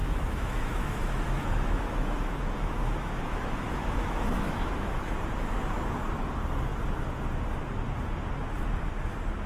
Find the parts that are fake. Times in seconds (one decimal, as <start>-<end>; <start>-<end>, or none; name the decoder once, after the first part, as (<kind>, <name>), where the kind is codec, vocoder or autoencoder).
0.0-5.1 (autoencoder, DAC-VAE)